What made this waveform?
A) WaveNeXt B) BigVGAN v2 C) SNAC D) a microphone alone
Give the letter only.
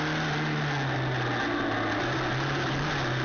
D